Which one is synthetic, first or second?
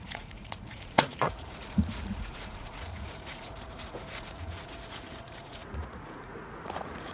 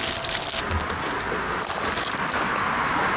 first